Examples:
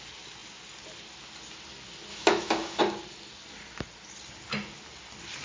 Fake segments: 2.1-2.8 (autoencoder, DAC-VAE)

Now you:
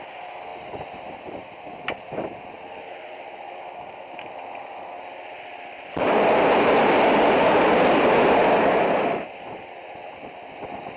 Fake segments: none

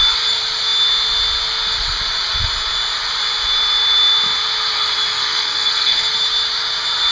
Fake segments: 5.2-6.0 (codec, SNAC)

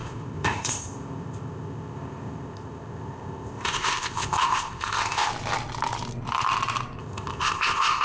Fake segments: 0.0-5.3 (codec, ZipCodec); 7.0-8.0

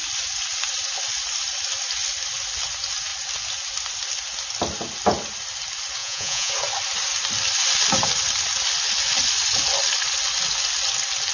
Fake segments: 6.0-6.5 (vocoder, Vocos)

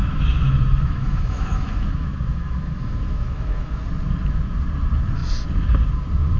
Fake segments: 0.0-3.8 (autoencoder, DAC-VAE)

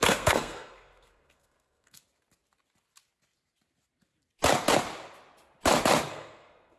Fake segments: 0.0-2.0 (codec, SNAC); 6.1-6.8

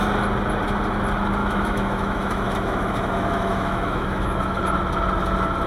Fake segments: 1.4-4.6 (autoencoder, DAC-VAE)